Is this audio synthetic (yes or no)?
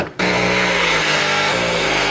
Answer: yes